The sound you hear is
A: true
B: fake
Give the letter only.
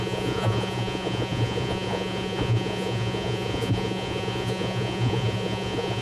B